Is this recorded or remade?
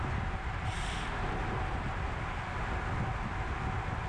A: recorded